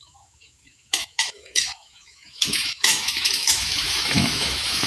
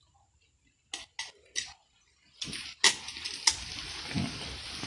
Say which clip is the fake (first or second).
first